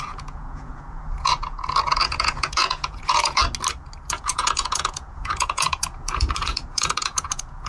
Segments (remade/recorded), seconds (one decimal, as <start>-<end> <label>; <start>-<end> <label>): 0.0-3.4 remade; 3.4-4.1 recorded; 4.1-7.7 remade

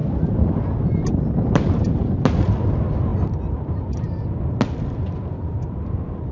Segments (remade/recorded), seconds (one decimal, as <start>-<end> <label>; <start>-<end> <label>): 0.0-6.3 recorded

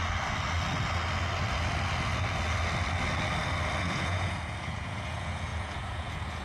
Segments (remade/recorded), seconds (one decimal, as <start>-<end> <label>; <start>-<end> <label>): 0.0-3.8 recorded; 3.8-6.4 remade

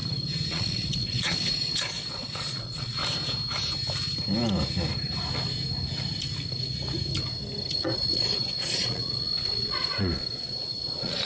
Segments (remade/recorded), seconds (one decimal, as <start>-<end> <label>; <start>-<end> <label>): 0.0-0.5 recorded; 0.5-3.0 remade; 3.0-7.7 recorded; 7.7-11.3 remade

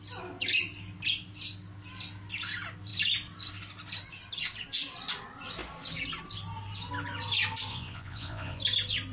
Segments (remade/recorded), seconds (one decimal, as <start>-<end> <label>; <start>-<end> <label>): 0.0-7.7 recorded; 7.7-8.6 remade; 8.6-9.1 recorded

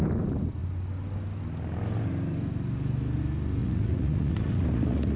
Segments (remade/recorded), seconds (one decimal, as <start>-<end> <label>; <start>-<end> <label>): 0.0-3.6 recorded; 3.6-5.2 remade

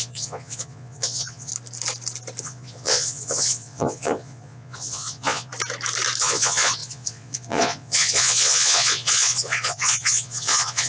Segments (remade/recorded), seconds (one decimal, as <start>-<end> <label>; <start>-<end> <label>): 0.0-1.5 remade; 1.5-2.4 recorded; 2.4-5.5 remade; 5.5-6.2 recorded; 6.2-10.9 remade

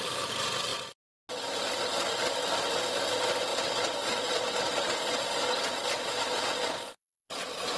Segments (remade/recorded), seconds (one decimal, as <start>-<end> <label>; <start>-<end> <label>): 0.0-3.5 recorded; 3.5-7.8 remade